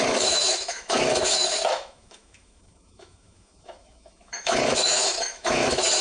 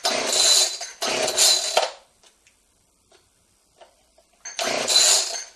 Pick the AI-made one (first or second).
first